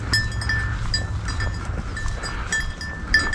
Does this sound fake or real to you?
real